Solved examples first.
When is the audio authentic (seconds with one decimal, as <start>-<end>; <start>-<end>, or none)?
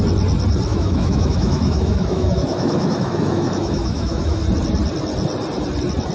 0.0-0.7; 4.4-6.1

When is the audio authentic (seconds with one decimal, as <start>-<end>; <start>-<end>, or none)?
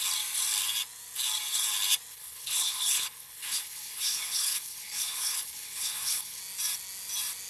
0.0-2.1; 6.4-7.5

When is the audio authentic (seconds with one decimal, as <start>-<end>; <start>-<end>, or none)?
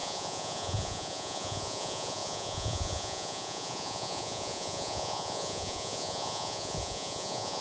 none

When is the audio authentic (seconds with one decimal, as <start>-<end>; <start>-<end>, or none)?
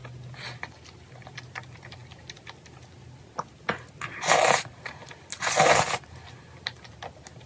0.0-7.5